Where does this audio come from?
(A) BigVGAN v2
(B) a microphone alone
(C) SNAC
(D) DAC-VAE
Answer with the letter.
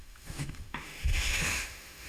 D